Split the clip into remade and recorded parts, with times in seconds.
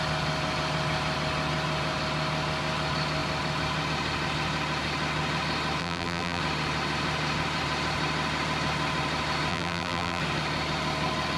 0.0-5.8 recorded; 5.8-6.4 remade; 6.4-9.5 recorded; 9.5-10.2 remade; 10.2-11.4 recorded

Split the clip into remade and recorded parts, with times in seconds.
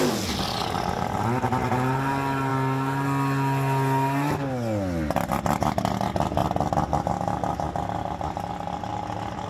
0.0-9.5 recorded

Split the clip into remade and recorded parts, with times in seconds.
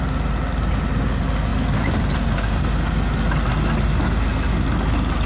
0.0-5.3 recorded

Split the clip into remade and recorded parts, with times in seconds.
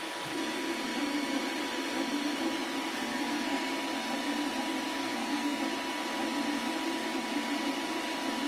0.0-2.9 recorded; 2.9-3.7 remade; 3.7-5.0 recorded; 5.0-5.6 remade; 5.6-8.5 recorded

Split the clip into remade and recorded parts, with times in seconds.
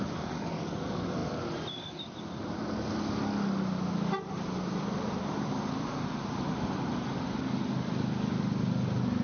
0.0-9.2 recorded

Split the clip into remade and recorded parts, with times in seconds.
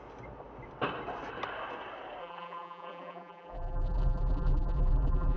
0.0-2.2 recorded; 2.2-5.4 remade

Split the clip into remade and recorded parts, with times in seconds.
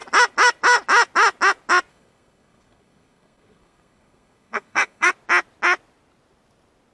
0.0-1.9 recorded; 1.9-5.1 remade; 5.1-6.9 recorded